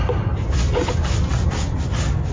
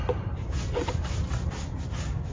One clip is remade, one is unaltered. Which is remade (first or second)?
second